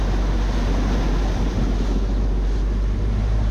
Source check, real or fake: real